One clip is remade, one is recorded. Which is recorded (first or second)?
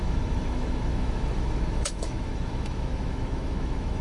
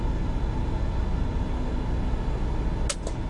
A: second